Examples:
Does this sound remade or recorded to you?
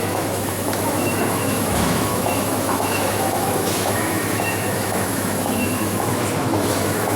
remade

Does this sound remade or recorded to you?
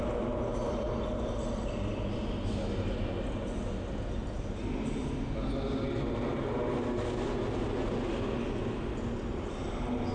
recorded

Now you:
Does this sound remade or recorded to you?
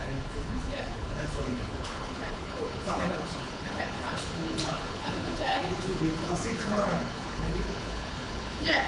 remade